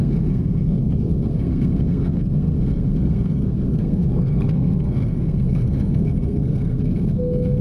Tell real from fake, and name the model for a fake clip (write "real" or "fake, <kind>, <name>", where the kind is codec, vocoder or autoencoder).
fake, codec, SNAC